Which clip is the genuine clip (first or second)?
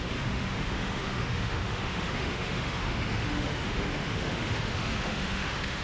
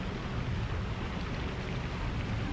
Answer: second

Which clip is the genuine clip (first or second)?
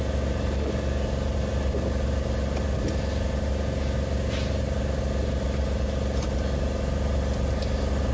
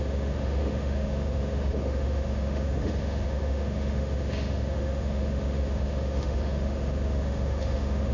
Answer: first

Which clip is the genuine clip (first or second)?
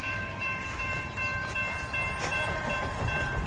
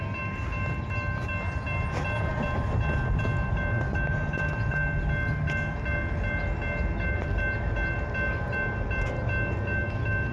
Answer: second